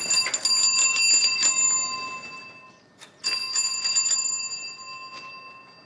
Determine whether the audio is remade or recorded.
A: recorded